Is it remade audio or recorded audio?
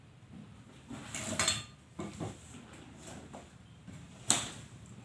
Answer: recorded